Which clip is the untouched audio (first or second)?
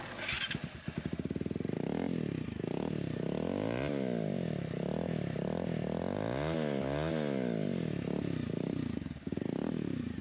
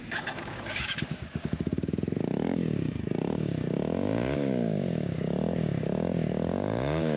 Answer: first